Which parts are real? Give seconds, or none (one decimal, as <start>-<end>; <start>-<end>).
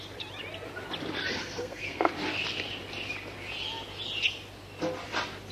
0.0-1.3; 2.1-5.5